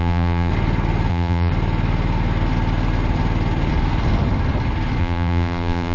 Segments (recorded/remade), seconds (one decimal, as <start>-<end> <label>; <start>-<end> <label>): 0.0-0.5 remade; 0.5-1.1 recorded; 1.1-1.5 remade; 1.5-5.0 recorded; 5.0-5.9 remade